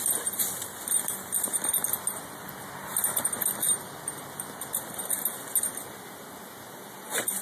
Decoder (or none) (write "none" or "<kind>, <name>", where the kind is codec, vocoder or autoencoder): none